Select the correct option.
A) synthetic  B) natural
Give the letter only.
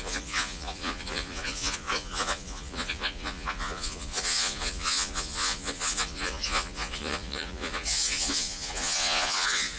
A